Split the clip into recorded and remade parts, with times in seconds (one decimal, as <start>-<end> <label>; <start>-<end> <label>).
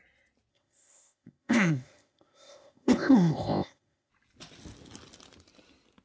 0.0-0.5 recorded; 0.5-4.1 remade; 4.1-6.0 recorded